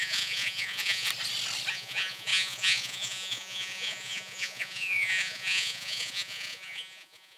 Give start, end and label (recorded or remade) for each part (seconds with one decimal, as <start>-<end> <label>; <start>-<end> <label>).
0.0-1.1 remade; 1.1-1.7 recorded; 1.7-7.4 remade